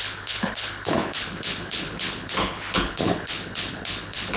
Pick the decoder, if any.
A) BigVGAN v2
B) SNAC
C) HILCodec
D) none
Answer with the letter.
C